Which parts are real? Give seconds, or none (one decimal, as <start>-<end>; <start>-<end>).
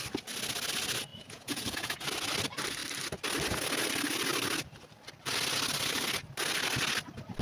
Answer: 0.0-1.1; 2.0-7.4